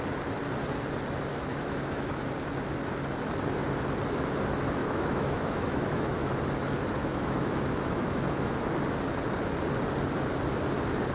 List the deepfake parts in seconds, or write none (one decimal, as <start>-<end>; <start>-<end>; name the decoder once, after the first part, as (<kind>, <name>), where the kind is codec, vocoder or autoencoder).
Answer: 1.3-2.2 (autoencoder, DAC-VAE); 4.8-6.3; 7.0-8.7